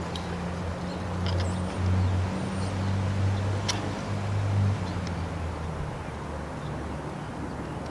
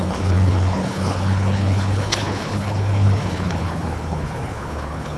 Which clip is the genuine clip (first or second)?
first